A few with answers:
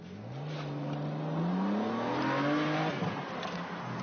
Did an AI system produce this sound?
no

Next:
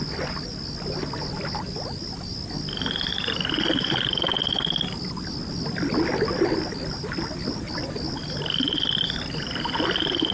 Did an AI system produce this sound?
no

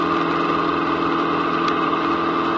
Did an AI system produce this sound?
no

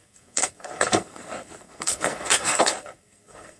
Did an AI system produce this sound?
yes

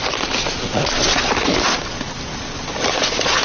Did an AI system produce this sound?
no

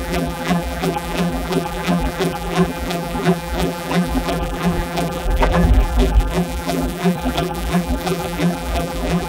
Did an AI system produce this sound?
yes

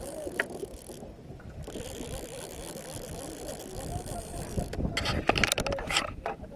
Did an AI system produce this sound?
no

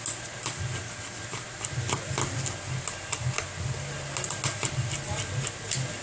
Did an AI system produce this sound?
no